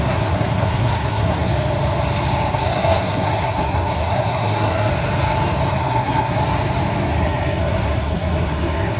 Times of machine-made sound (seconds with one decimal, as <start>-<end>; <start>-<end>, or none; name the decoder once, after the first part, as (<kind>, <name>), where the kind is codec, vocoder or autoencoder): 0.0-1.5 (codec, SNAC); 2.5-4.9; 5.7-6.4; 7.2-9.0